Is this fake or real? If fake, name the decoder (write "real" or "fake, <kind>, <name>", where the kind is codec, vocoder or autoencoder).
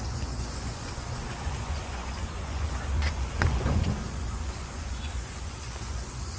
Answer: fake, vocoder, Vocos